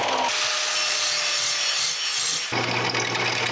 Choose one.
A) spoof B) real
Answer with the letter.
B